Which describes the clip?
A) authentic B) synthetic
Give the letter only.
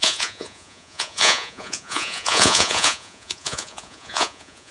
B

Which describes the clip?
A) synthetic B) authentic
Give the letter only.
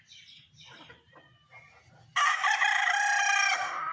B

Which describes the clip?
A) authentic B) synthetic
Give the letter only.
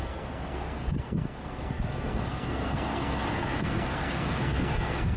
B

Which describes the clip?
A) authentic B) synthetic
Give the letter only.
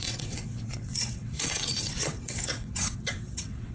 B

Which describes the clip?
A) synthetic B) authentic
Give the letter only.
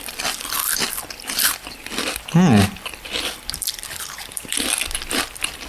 A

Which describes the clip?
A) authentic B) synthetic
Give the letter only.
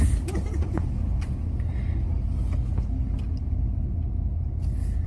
A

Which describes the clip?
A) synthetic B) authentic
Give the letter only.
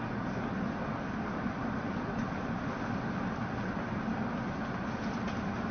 B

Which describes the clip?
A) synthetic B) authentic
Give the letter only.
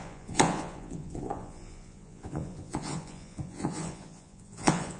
A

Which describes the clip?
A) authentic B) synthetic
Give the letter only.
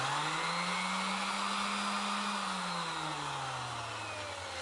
A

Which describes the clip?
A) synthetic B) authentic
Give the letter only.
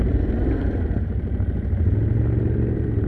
B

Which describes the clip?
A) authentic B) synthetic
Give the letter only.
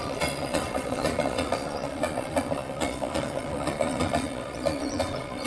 B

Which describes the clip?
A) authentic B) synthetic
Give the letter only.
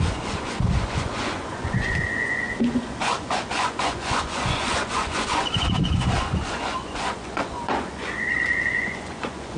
B